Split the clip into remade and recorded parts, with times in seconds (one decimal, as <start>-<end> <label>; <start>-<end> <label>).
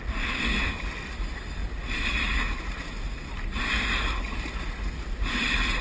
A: 0.0-5.8 recorded